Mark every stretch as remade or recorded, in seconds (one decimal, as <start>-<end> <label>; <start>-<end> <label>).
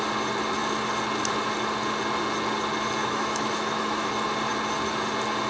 0.0-3.0 recorded; 3.0-4.1 remade; 4.1-5.5 recorded